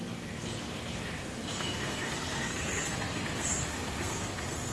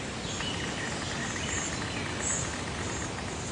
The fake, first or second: first